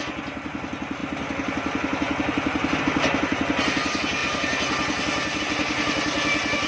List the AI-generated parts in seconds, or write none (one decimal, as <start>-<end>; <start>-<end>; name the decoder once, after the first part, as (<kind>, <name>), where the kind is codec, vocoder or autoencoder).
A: none